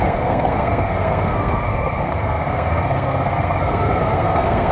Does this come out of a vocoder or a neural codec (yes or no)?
yes